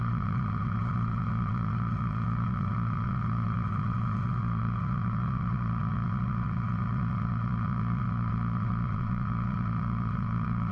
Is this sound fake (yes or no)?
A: yes